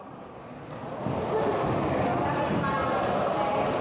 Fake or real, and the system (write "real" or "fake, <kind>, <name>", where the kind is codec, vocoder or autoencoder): real